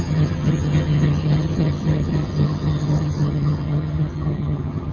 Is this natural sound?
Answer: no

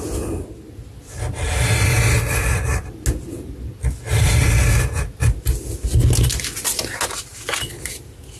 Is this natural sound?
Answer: yes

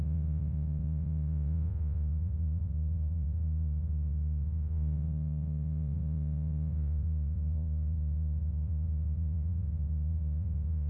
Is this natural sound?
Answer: no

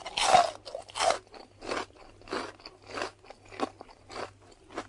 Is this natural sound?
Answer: yes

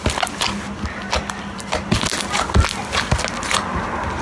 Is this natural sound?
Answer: yes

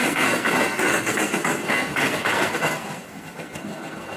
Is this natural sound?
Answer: no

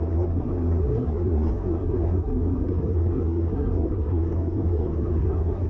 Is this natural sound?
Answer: no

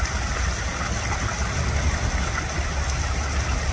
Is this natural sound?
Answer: yes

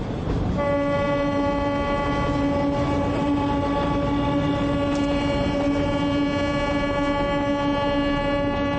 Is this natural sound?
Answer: yes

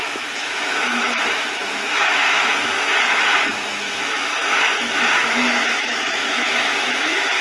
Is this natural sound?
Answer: no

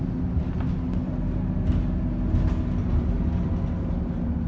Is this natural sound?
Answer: yes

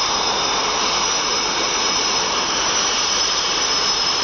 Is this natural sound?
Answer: no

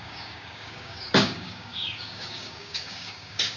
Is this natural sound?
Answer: no